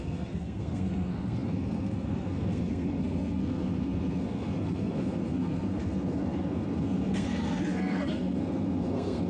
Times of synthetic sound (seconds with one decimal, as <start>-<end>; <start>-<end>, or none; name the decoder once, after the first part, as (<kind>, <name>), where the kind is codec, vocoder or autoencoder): 0.0-9.3 (codec, SNAC)